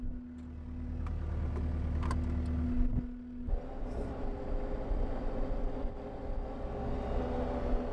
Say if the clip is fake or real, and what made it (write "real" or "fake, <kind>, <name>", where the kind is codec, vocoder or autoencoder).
real